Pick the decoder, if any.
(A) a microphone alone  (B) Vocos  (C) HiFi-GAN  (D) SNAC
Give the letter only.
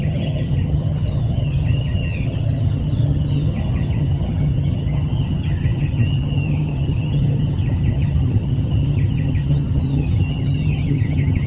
C